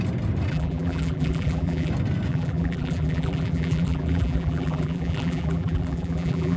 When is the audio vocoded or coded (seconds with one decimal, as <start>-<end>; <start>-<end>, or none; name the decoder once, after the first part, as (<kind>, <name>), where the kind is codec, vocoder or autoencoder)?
0.5-1.9 (vocoder, BigVGAN v2); 2.3-6.6